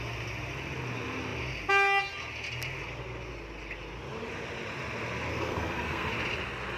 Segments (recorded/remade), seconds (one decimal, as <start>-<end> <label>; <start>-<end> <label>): 0.0-5.3 recorded; 5.3-6.1 remade; 6.1-6.8 recorded